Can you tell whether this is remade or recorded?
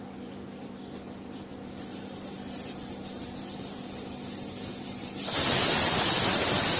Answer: recorded